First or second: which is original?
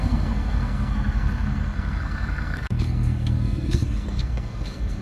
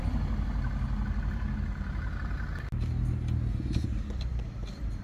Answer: second